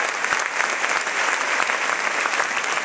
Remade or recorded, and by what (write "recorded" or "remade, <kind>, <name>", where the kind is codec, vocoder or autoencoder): recorded